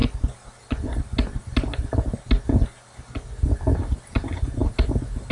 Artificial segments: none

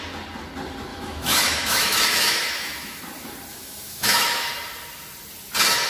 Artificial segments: 0.9-3.0; 3.5-4.5

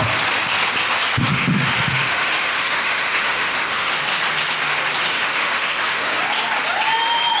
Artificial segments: 1.3-3.9; 5.1-6.2

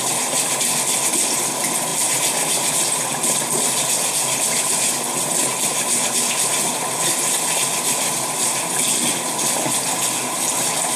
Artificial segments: none

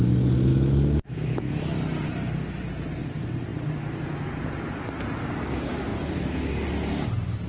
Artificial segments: 0.5-1.5

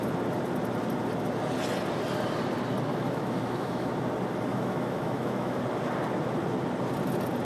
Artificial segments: 2.9-3.9; 4.5-5.6

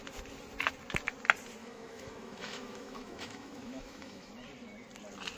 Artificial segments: 1.6-4.3

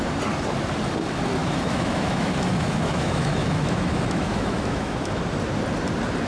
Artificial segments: 1.4-5.2